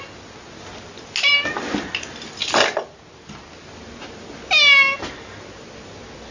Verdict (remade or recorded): recorded